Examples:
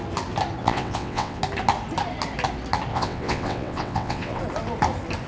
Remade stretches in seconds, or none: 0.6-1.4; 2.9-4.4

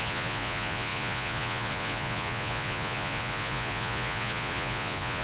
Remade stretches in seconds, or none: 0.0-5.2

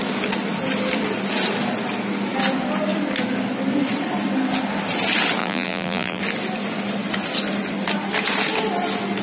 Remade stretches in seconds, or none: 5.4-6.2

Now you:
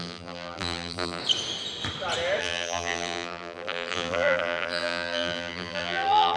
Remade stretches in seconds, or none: 0.0-1.2; 2.4-6.4

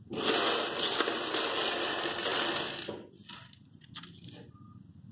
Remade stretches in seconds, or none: none